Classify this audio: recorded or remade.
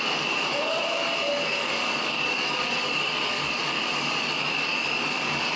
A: remade